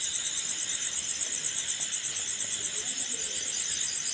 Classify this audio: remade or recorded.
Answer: recorded